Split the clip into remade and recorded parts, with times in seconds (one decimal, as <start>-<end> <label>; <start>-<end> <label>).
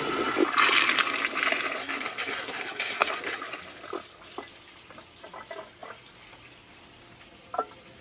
0.0-1.8 recorded; 1.8-3.4 remade; 3.4-8.0 recorded